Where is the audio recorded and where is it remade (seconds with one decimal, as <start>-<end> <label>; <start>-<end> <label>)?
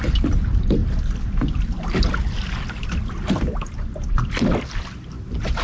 0.0-5.6 recorded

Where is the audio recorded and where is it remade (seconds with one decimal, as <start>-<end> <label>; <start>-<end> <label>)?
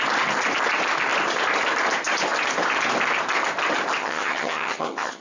0.0-4.0 recorded; 4.0-5.2 remade